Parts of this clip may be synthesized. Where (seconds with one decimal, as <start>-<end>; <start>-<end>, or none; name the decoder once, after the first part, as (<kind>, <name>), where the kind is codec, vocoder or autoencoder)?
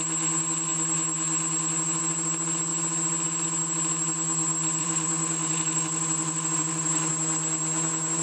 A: 4.8-7.1 (vocoder, BigVGAN v2)